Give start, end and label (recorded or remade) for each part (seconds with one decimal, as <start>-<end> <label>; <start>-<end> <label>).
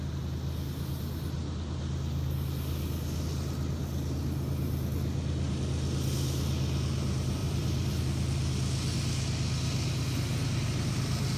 0.0-7.4 recorded; 7.4-8.0 remade; 8.0-11.4 recorded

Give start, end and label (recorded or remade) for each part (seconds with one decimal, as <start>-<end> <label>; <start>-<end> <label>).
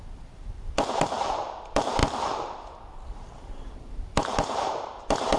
0.0-2.0 remade; 2.0-3.1 recorded; 3.1-5.4 remade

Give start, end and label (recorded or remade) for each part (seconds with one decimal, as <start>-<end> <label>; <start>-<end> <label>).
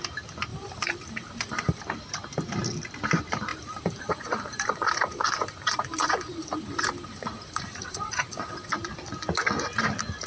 0.0-0.5 recorded; 0.5-1.8 remade; 1.8-3.5 recorded; 3.5-8.7 remade; 8.7-10.3 recorded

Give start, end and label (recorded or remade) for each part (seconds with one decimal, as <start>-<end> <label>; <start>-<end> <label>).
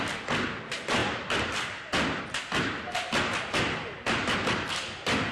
0.0-5.3 recorded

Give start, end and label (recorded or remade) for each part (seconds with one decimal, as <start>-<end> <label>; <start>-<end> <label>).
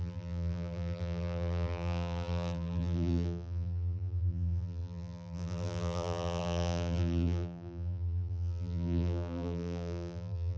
0.0-10.6 remade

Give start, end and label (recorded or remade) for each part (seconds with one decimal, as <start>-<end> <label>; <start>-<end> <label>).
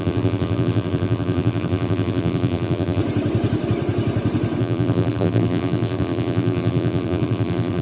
0.0-3.0 remade; 3.0-4.6 recorded; 4.6-7.8 remade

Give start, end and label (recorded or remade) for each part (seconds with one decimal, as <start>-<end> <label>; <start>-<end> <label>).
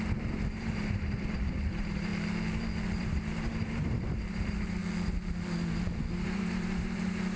0.0-2.1 remade; 2.1-3.0 recorded; 3.0-4.8 remade; 4.8-6.1 recorded; 6.1-7.4 remade